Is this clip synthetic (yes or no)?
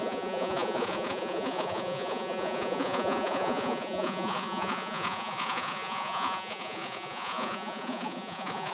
yes